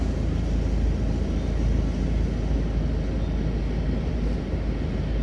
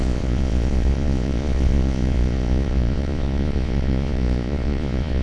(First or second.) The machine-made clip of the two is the second